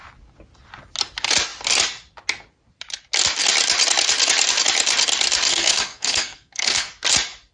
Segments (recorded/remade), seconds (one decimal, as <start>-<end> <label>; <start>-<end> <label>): 0.0-5.5 recorded; 5.5-6.9 remade; 6.9-7.5 recorded